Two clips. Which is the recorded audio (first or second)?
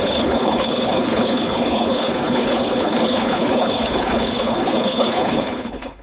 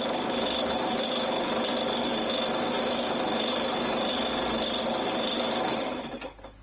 second